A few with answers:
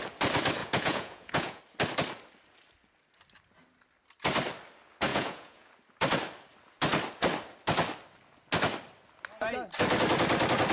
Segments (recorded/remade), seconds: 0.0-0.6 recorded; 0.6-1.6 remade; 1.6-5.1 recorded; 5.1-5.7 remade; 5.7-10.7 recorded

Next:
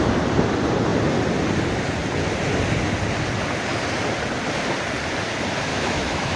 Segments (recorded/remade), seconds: 0.0-5.7 recorded; 5.7-6.4 remade

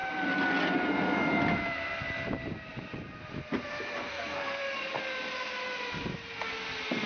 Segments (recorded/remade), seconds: 0.0-4.1 recorded; 4.1-4.6 remade; 4.6-7.1 recorded

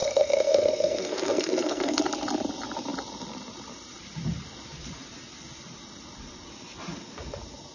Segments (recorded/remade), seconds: 0.0-2.0 remade; 2.0-7.7 recorded

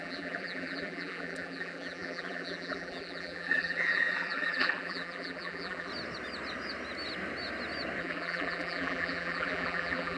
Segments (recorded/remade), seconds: 0.0-5.9 remade; 5.9-8.0 recorded; 8.0-10.2 remade

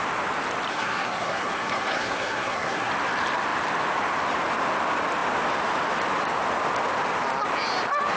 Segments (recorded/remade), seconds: 0.0-0.7 recorded; 0.7-2.9 remade; 2.9-8.2 recorded